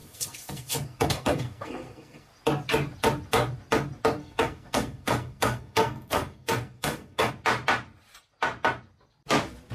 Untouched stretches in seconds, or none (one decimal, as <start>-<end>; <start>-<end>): 2.3-4.2; 7.3-9.7